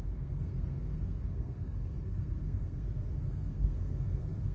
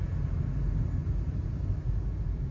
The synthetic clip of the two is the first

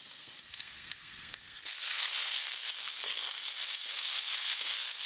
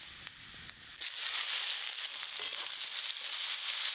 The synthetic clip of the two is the first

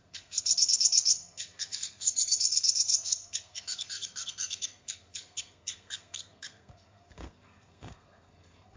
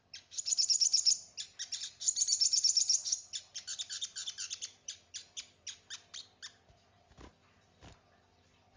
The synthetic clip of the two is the first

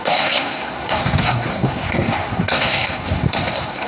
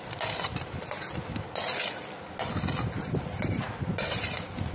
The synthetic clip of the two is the first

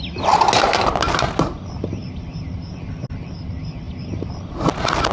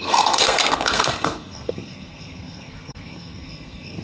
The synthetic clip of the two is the second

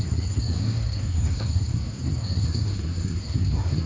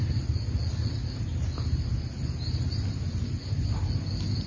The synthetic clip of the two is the first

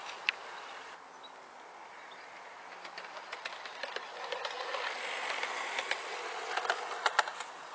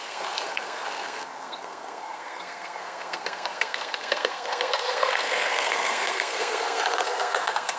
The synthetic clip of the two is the second